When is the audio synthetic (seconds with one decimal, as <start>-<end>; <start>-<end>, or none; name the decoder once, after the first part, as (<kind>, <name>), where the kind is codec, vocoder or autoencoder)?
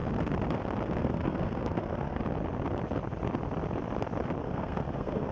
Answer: 1.0-2.2 (codec, SNAC); 4.4-5.3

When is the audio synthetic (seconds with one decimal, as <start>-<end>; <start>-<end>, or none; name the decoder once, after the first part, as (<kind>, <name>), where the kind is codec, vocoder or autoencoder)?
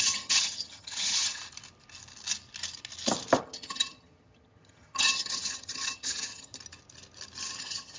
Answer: 0.0-1.4 (vocoder, HiFi-GAN); 3.4-6.5; 7.6-8.0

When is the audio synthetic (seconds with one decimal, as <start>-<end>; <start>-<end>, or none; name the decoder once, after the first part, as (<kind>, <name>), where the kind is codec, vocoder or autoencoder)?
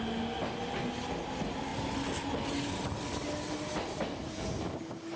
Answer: none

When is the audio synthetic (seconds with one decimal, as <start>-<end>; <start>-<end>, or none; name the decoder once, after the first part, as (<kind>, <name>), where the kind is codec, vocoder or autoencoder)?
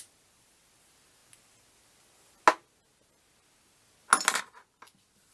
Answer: none